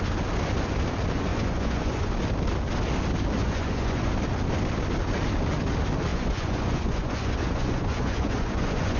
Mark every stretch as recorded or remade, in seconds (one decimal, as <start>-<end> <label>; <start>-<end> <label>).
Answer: 0.0-1.3 recorded; 1.3-2.1 remade; 2.1-3.4 recorded; 3.4-4.1 remade; 4.1-6.1 recorded; 6.1-9.0 remade